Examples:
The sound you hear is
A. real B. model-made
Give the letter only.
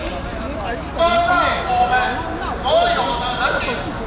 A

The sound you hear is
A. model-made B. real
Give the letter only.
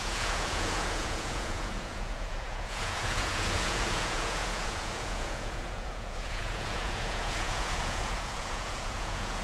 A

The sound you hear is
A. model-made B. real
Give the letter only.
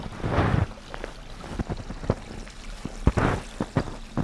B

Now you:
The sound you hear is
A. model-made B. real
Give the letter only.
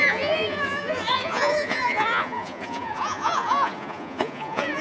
A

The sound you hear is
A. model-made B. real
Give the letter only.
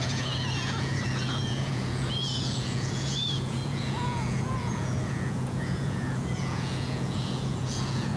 A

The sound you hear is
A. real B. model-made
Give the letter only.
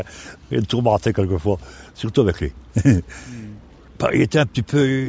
A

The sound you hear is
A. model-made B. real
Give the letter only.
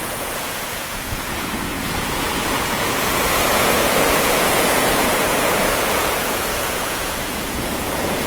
A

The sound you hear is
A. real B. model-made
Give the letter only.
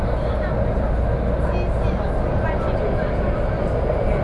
A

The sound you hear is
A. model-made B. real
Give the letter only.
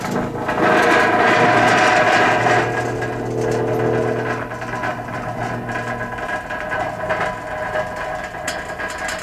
B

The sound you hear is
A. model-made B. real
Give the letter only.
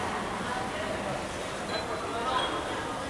B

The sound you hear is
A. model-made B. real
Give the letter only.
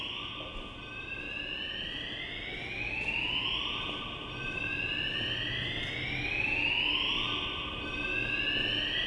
B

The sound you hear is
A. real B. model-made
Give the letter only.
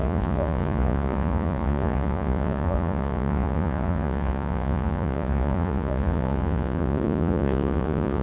B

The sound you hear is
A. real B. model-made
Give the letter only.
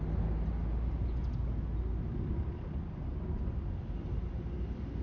A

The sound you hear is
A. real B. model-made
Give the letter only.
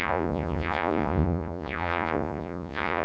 B